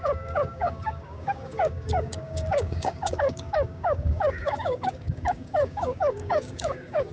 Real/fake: fake